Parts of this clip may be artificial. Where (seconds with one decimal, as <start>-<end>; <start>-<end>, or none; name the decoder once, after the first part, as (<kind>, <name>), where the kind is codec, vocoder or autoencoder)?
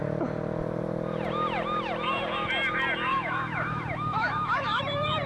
3.1-4.8 (autoencoder, DAC-VAE)